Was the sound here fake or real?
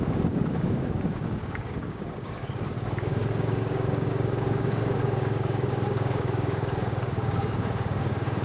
fake